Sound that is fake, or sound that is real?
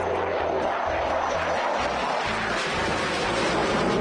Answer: real